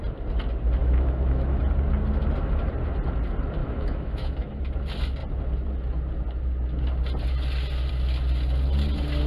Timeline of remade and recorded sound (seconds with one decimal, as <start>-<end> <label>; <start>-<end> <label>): 0.0-0.8 recorded; 0.8-1.6 remade; 1.6-3.6 recorded; 3.6-4.6 remade; 4.6-9.3 recorded